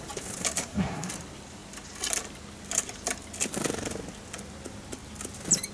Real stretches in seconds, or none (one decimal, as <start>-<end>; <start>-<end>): 0.0-0.6; 1.1-5.7